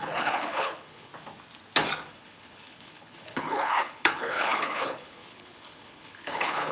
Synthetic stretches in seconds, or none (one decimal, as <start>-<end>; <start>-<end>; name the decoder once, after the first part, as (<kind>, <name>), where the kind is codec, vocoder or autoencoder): 0.0-1.1 (codec, HILCodec); 2.1-6.7